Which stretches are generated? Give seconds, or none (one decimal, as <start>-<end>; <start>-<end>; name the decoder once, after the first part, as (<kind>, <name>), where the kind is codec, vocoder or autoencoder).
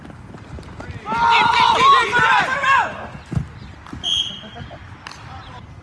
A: none